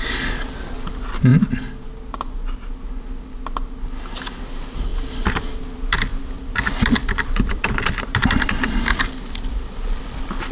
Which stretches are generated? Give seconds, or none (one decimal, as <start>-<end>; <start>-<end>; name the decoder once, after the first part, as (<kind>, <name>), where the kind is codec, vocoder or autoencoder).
0.0-1.3 (vocoder, BigVGAN v2); 4.4-10.5